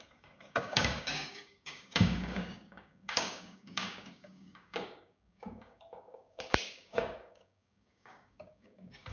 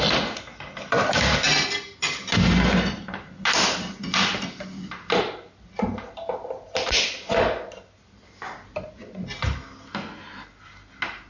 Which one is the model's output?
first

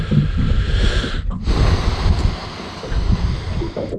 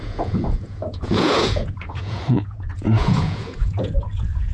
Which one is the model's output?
second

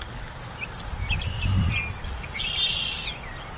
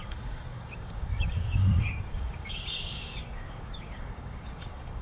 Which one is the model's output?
second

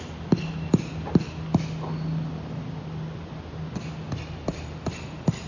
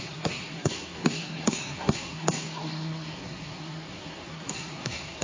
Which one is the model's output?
second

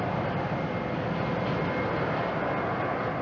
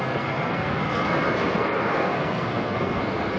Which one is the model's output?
second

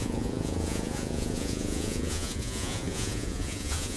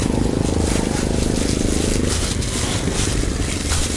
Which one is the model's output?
first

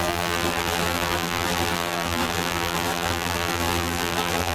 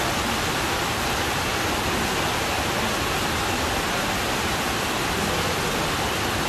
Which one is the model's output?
first